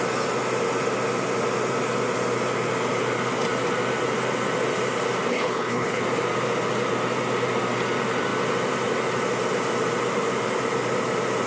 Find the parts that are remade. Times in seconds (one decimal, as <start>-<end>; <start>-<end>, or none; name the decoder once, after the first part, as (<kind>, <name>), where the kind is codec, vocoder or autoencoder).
5.3-6.0 (codec, HILCodec)

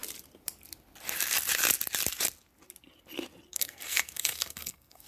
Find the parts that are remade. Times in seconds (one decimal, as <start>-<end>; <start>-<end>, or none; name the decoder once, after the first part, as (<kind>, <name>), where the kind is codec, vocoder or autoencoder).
3.5-5.1 (codec, SNAC)